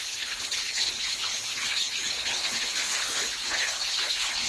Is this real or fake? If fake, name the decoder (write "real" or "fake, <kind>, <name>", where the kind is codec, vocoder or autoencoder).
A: fake, codec, HILCodec